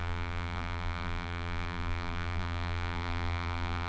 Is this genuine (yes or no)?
no